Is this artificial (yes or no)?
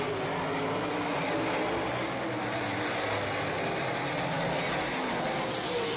no